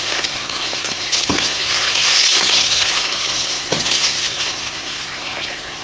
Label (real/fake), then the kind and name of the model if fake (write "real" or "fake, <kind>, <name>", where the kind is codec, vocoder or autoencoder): fake, codec, SNAC